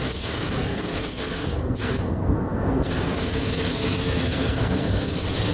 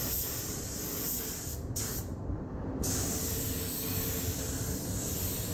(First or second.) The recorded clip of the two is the second